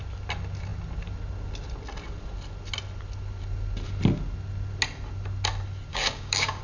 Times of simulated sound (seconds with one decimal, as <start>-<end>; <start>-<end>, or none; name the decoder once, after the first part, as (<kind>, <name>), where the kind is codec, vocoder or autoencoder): 5.9-6.6 (codec, DAC)